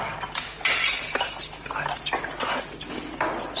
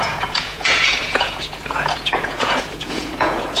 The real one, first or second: first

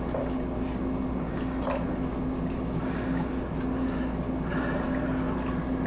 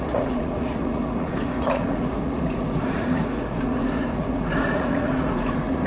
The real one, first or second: first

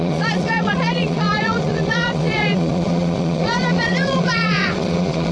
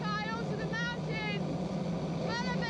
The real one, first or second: second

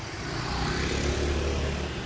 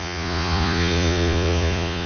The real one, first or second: first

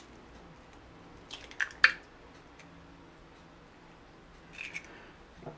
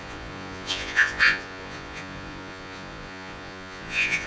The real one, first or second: first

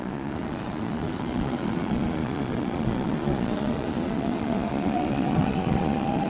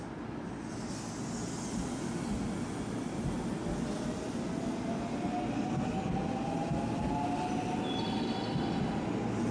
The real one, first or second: second